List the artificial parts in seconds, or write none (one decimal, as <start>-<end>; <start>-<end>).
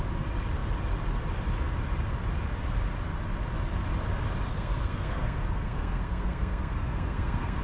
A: 4.5-7.6